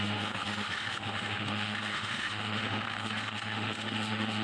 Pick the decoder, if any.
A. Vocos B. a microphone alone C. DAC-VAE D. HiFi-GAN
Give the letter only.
C